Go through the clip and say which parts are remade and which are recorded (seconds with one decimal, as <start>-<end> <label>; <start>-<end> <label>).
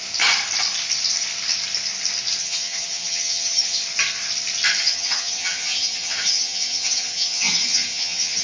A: 0.0-2.4 recorded; 2.4-3.8 remade; 3.8-4.8 recorded; 4.8-8.4 remade